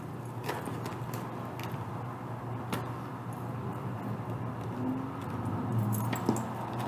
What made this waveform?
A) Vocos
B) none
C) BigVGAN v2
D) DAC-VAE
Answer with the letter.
B